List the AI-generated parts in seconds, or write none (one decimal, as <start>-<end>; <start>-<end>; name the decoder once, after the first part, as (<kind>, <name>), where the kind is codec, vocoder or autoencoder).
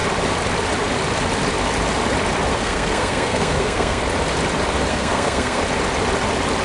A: 2.5-4.0 (codec, SNAC); 4.9-5.6